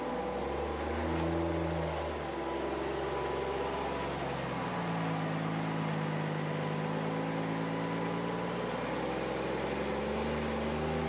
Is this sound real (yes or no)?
yes